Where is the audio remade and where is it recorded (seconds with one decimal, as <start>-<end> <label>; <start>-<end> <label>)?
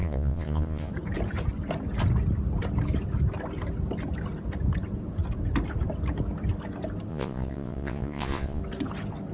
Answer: 0.0-0.9 remade; 0.9-7.1 recorded; 7.1-8.6 remade; 8.6-9.3 recorded